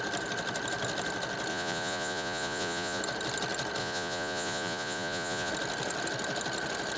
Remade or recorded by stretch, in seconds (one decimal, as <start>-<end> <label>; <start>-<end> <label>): 0.0-1.5 recorded; 1.5-3.0 remade; 3.0-3.8 recorded; 3.8-5.5 remade; 5.5-7.0 recorded